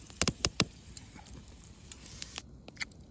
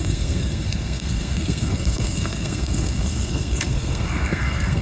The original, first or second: first